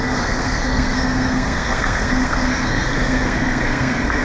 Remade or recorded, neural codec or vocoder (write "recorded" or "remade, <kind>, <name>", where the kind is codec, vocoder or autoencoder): remade, codec, SNAC